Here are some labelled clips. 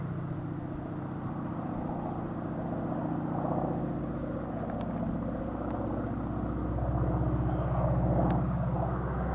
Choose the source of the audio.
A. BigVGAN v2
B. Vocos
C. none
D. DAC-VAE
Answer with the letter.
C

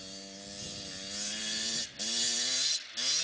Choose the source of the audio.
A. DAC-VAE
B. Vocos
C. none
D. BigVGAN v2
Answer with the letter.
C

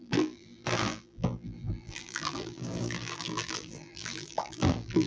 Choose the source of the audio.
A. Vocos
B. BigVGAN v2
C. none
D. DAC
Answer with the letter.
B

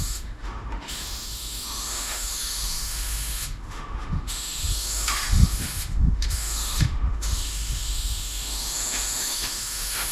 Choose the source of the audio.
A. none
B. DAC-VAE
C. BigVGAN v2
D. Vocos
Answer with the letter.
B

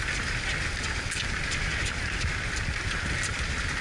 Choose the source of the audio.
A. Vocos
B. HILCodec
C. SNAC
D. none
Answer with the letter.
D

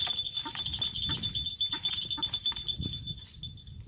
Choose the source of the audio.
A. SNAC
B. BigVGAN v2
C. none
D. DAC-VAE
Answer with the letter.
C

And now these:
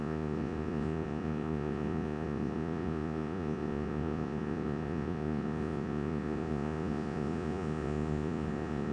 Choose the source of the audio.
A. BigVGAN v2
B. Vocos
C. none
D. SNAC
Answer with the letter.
B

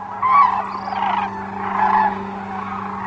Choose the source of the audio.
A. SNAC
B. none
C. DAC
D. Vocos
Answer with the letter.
B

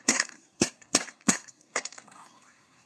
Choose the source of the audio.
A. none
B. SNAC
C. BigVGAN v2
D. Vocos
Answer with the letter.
B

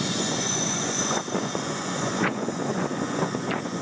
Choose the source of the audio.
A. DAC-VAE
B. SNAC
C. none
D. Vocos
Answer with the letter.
D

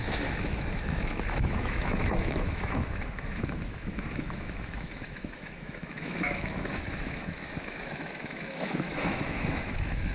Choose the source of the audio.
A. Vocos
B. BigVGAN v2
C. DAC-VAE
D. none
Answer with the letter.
C